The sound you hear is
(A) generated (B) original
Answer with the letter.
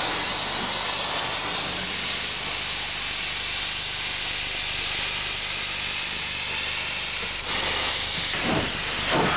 B